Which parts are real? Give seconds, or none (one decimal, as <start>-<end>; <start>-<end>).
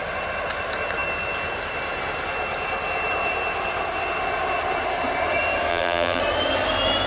0.0-5.7; 6.2-7.1